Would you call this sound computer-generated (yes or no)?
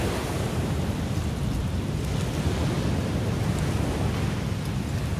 no